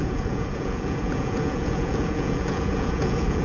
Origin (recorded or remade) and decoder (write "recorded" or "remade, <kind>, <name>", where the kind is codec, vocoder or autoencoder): remade, vocoder, Vocos